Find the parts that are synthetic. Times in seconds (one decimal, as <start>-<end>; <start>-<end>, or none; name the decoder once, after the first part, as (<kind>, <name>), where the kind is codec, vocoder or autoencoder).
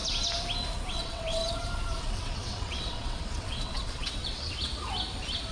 0.9-1.4 (vocoder, WaveNeXt); 2.0-4.7